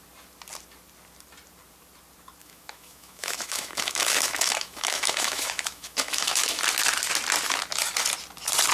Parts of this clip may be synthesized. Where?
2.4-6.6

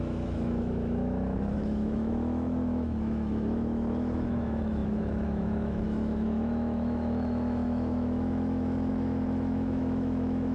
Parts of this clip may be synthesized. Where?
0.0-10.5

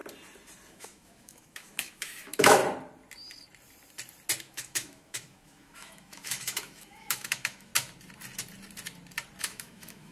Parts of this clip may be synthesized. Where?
0.7-2.6; 4.4-7.7; 9.4-10.1